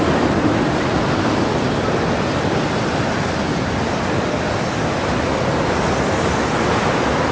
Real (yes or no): yes